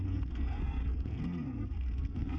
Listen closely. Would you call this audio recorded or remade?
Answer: remade